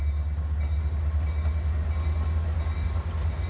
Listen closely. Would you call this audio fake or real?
real